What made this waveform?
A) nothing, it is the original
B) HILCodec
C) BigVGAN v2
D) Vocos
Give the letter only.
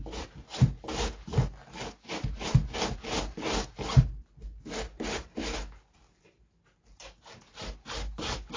A